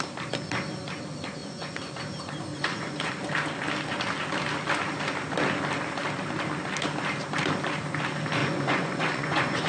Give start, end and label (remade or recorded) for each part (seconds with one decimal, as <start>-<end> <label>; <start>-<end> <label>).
0.0-1.4 recorded; 1.4-2.0 remade; 2.0-2.5 recorded; 2.5-3.1 remade; 3.1-8.4 recorded; 8.4-9.7 remade